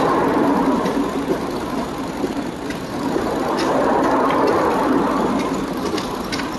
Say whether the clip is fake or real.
real